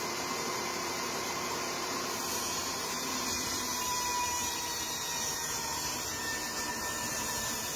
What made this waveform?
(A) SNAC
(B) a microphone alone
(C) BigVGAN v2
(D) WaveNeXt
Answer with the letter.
C